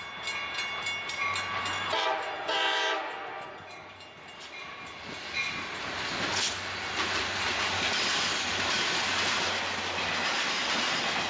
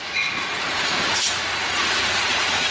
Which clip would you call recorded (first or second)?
first